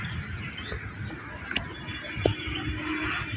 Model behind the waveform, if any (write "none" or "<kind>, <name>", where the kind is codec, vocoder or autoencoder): none